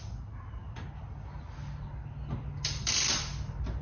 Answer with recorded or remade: recorded